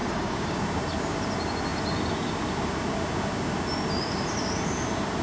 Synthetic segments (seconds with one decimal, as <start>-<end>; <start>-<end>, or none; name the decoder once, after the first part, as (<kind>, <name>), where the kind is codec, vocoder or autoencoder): 0.0-0.6 (codec, DAC)